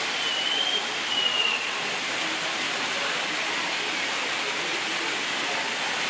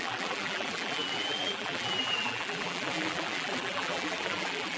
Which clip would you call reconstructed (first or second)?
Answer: second